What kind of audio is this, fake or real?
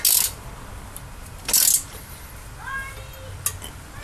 real